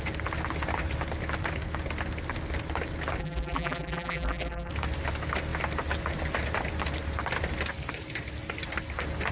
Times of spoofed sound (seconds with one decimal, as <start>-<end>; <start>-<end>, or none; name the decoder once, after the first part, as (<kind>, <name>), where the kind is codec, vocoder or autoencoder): 3.2-4.7 (vocoder, BigVGAN v2)